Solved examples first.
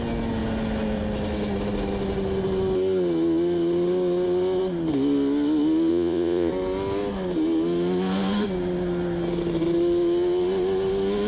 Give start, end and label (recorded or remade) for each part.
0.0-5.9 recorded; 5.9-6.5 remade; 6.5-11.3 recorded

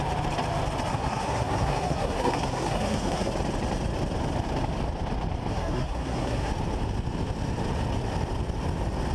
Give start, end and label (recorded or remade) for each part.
0.0-0.9 recorded; 0.9-3.3 remade; 3.3-5.5 recorded; 5.5-6.5 remade; 6.5-9.1 recorded

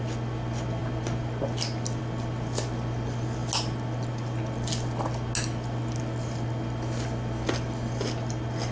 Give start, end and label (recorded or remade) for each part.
0.0-8.7 recorded

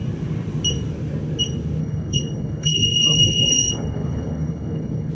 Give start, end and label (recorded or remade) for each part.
0.0-1.8 recorded; 1.8-5.1 remade